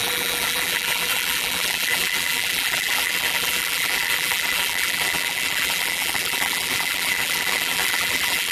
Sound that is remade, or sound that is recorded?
remade